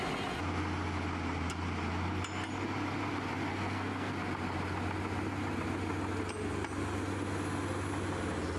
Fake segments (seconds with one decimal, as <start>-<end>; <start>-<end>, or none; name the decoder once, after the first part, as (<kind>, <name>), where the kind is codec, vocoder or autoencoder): 3.5-4.1 (codec, SNAC)